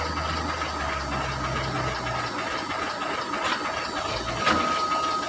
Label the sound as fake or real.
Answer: real